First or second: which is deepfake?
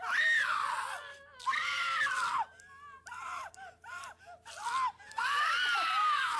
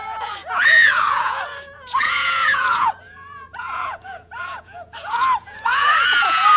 second